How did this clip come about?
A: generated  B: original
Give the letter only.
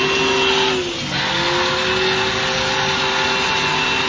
B